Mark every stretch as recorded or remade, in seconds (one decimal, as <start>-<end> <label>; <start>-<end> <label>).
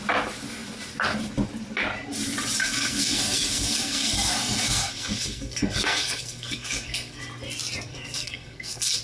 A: 0.0-2.6 recorded; 2.6-7.2 remade; 7.2-7.9 recorded; 7.9-9.0 remade